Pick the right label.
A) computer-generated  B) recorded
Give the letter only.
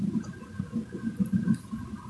B